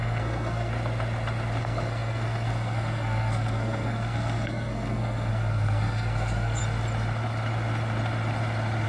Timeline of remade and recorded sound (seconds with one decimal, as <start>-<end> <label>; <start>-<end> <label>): 0.0-0.7 remade; 0.7-1.6 recorded; 1.6-6.6 remade; 6.6-8.9 recorded